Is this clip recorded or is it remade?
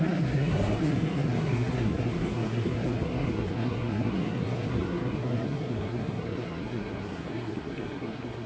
remade